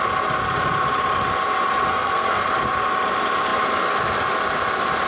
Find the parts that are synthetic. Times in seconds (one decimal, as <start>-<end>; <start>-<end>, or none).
1.9-2.5